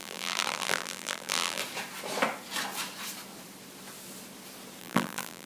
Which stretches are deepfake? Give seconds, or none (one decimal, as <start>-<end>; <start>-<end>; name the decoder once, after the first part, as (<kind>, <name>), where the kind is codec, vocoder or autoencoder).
0.0-1.6 (vocoder, BigVGAN v2); 4.8-5.4